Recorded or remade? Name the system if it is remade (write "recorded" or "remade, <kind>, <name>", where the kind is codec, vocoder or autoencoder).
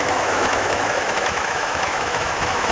remade, autoencoder, DAC-VAE